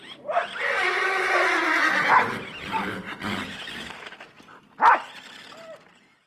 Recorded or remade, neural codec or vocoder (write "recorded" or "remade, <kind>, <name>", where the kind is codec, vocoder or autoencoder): recorded